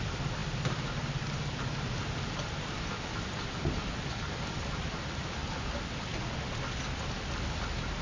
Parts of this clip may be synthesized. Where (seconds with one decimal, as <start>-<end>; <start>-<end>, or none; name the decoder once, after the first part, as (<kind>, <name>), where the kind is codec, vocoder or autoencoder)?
none